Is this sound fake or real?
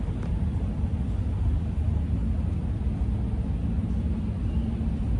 real